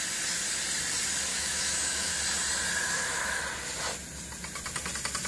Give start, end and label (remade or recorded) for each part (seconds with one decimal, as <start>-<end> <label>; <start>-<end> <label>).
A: 0.0-1.3 recorded; 1.3-2.1 remade; 2.1-2.8 recorded; 2.8-3.4 remade; 3.4-5.3 recorded